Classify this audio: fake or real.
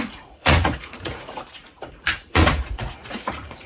fake